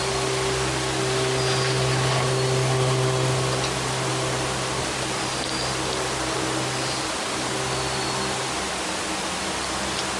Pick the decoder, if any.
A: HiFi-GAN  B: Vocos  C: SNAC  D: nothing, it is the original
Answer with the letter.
D